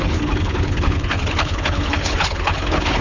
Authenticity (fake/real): fake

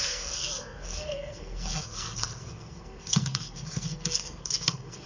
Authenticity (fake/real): fake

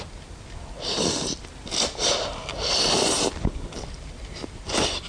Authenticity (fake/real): fake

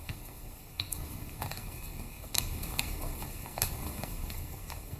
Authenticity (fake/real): fake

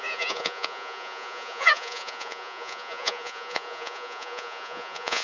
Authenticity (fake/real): fake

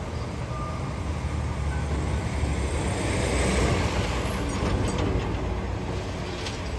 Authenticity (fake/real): real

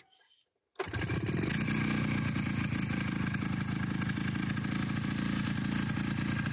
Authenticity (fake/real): real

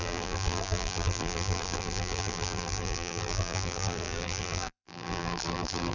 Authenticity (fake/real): fake